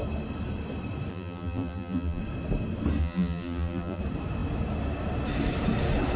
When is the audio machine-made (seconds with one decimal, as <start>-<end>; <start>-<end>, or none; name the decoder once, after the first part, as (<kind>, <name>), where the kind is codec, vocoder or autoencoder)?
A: 1.1-2.2 (vocoder, BigVGAN v2); 3.0-4.0